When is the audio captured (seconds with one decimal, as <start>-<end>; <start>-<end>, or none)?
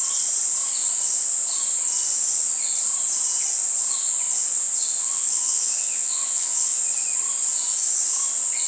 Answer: 0.0-5.0; 6.8-8.7